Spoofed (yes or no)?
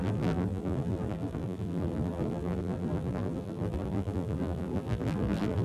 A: yes